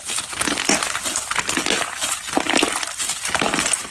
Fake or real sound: real